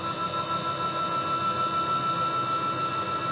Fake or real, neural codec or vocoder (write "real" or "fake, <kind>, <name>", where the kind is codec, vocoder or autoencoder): real